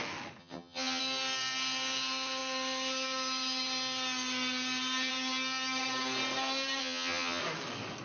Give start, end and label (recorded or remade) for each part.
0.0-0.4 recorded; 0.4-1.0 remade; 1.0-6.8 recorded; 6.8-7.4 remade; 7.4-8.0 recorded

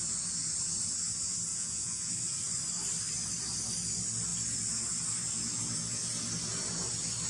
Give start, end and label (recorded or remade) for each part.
0.0-1.5 recorded; 1.5-2.1 remade; 2.1-7.3 recorded

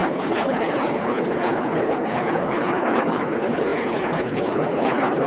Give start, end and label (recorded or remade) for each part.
0.0-5.3 remade

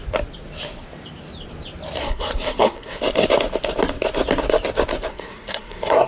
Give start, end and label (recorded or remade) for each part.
0.0-2.0 recorded; 2.0-3.0 remade; 3.0-5.1 recorded; 5.1-6.1 remade

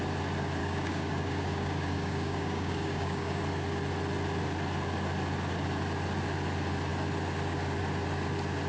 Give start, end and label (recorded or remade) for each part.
0.0-0.6 recorded; 0.6-3.4 remade; 3.4-8.7 recorded

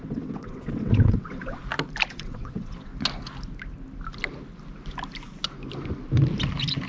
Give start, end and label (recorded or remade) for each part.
0.0-1.6 remade; 1.6-2.1 recorded; 2.1-2.9 remade; 2.9-6.9 recorded

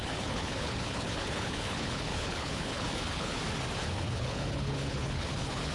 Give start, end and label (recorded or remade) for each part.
0.0-3.4 remade; 3.4-3.8 recorded; 3.8-5.7 remade